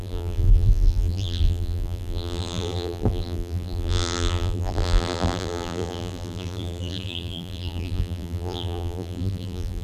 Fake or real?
fake